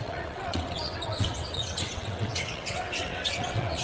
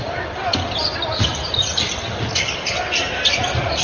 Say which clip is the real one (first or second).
second